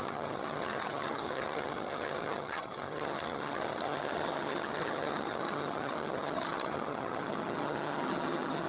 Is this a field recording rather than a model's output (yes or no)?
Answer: no